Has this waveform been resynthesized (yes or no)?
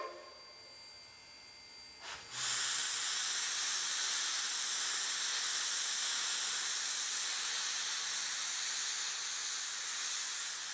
no